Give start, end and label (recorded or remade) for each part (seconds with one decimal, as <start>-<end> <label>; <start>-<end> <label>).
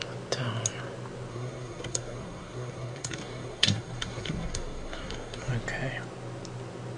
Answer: 0.0-1.3 recorded; 1.3-5.5 remade; 5.5-7.0 recorded